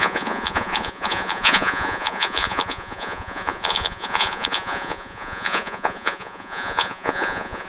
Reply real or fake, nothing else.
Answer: fake